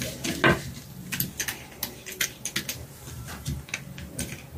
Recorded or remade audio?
recorded